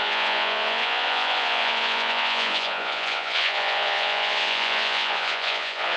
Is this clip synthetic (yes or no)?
yes